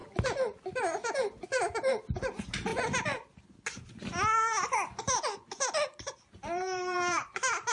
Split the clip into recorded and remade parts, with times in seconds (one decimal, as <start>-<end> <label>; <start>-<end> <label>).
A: 0.0-0.8 recorded; 0.8-2.7 remade; 2.7-6.0 recorded; 6.0-7.7 remade